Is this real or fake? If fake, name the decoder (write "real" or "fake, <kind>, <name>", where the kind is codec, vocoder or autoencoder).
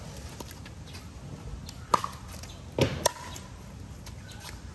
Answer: real